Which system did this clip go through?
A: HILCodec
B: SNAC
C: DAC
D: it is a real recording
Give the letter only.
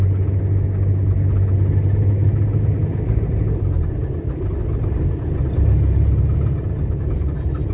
D